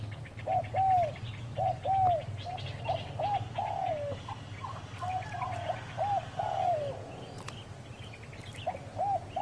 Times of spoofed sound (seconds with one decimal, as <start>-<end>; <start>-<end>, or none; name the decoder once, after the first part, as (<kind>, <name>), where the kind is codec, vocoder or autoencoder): none